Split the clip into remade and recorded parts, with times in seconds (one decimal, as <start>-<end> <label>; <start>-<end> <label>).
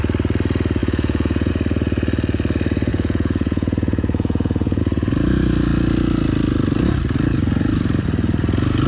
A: 0.0-0.8 recorded; 0.8-1.5 remade; 1.5-2.9 recorded; 2.9-4.8 remade; 4.8-8.9 recorded